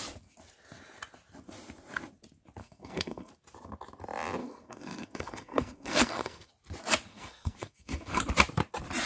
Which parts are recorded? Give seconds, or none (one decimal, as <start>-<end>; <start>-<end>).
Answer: 0.0-2.6; 3.3-4.4; 6.5-7.1; 8.2-9.1